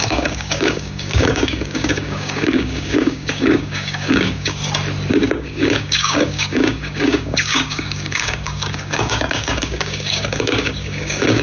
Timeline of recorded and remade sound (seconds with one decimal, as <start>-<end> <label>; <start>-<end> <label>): 0.0-4.6 remade; 4.6-5.1 recorded; 5.1-11.4 remade